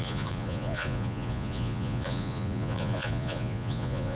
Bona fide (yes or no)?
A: no